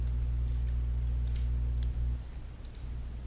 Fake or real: real